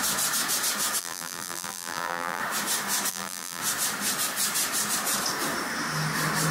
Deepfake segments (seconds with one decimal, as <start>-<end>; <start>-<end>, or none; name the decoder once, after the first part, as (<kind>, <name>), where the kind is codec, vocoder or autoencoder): 1.0-2.4 (vocoder, BigVGAN v2); 3.1-3.6